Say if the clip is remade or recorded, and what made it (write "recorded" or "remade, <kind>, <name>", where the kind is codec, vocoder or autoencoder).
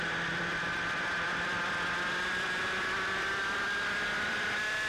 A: remade, vocoder, BigVGAN v2